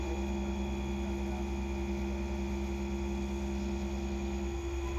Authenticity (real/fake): real